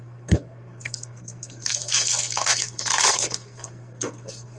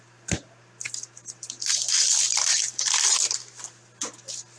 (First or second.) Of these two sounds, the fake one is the first